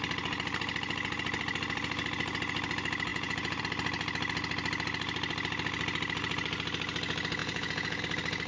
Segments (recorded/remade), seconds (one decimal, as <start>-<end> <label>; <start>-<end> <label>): 0.0-3.1 recorded; 3.1-3.6 remade; 3.6-7.4 recorded; 7.4-8.0 remade; 8.0-8.5 recorded